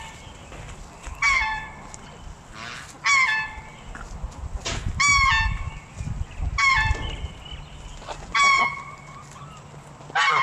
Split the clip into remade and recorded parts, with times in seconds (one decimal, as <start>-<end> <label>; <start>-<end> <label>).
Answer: 0.0-10.4 recorded